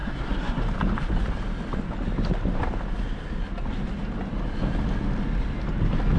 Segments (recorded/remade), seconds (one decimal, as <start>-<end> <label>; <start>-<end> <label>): 0.0-0.6 remade; 0.6-6.2 recorded